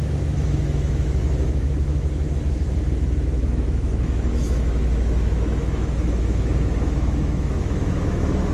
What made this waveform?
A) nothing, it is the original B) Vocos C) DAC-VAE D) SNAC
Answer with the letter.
C